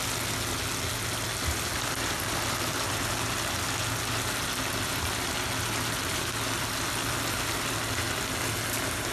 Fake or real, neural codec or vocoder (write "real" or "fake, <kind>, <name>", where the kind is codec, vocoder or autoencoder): real